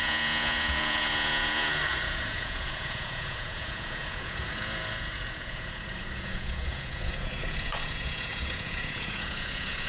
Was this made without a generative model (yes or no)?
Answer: no